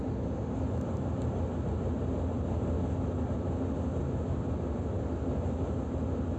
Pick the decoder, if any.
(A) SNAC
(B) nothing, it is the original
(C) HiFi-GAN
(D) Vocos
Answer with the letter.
B